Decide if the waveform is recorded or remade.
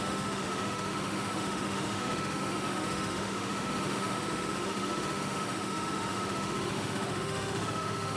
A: remade